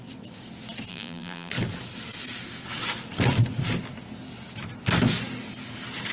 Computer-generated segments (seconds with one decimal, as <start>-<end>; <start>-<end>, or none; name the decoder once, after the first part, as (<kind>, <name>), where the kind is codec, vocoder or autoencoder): 0.9-1.5 (vocoder, BigVGAN v2)

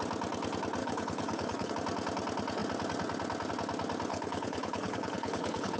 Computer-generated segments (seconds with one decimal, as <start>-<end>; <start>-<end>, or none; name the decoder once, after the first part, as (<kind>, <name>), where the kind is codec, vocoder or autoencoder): 0.8-1.7 (codec, HILCodec); 4.1-5.8

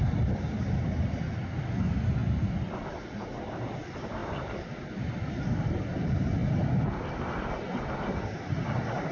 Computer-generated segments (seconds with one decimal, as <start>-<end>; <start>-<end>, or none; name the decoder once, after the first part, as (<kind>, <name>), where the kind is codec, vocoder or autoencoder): none

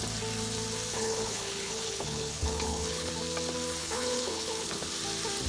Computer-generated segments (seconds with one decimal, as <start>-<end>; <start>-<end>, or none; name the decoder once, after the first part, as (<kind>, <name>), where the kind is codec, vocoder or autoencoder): 0.9-3.1 (codec, HILCodec); 3.8-4.9